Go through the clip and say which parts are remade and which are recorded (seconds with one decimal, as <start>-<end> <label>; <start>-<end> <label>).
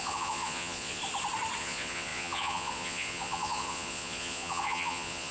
0.0-1.0 remade; 1.0-1.6 recorded; 1.6-5.3 remade